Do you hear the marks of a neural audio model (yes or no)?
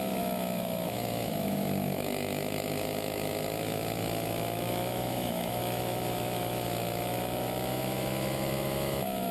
yes